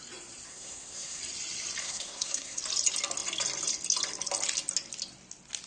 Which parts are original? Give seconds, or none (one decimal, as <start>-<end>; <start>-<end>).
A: 0.0-0.5; 1.2-1.8; 2.6-5.7